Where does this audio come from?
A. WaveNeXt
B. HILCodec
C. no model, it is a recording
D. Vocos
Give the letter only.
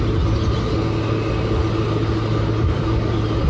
C